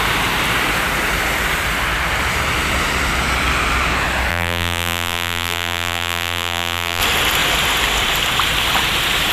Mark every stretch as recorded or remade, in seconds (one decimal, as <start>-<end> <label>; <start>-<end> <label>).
0.0-4.3 recorded; 4.3-7.0 remade; 7.0-9.3 recorded